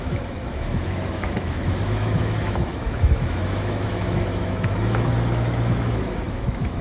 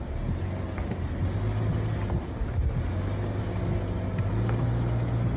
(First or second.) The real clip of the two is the second